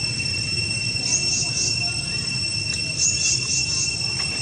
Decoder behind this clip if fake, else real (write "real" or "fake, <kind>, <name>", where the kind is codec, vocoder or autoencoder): real